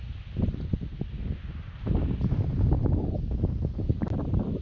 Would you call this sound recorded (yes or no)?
yes